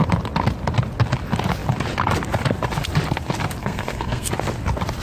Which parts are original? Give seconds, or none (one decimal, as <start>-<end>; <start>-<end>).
0.0-3.6; 4.3-5.0